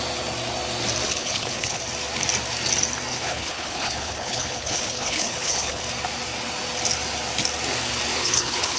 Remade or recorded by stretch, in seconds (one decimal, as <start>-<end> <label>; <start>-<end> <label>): 0.0-1.2 recorded; 1.2-1.8 remade; 1.8-3.1 recorded; 3.1-5.8 remade; 5.8-8.1 recorded; 8.1-8.8 remade